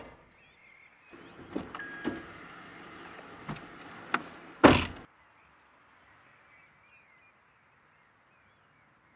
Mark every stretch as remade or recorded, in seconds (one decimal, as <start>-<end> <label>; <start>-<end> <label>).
0.0-9.2 recorded